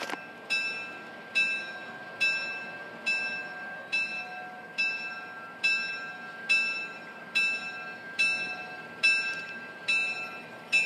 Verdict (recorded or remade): recorded